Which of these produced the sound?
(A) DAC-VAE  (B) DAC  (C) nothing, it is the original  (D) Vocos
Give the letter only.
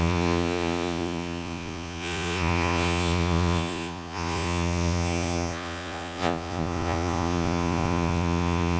D